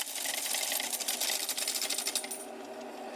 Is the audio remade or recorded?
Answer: recorded